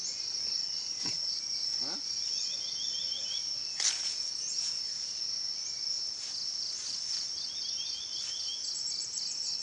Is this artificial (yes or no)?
no